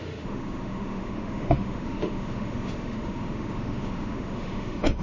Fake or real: fake